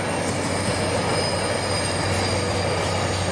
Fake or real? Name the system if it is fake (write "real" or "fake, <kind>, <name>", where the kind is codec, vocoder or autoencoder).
real